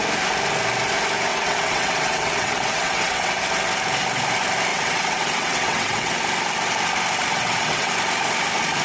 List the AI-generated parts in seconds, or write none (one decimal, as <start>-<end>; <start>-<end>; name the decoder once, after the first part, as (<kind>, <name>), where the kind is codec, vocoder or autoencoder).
1.3-3.4 (vocoder, WaveNeXt); 4.7-6.2; 7.3-7.9